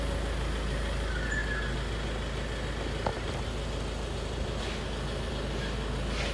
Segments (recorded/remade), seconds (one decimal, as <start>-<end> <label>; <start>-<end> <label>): 0.0-6.3 recorded